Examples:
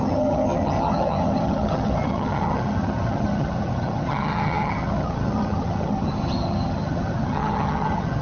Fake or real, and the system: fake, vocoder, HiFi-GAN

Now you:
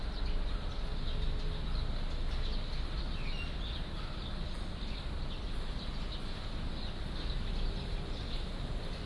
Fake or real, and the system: real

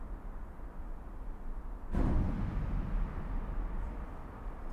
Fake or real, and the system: real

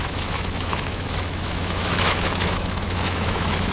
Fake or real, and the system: fake, autoencoder, DAC-VAE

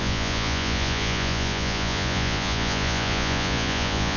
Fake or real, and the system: fake, vocoder, Vocos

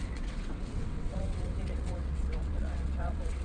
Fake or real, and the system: fake, vocoder, WaveNeXt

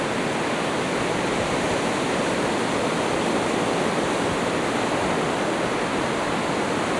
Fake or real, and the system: real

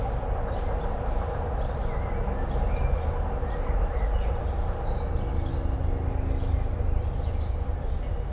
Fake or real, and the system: real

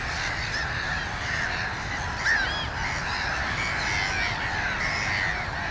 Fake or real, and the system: real